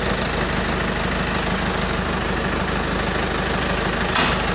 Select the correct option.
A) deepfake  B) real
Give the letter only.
B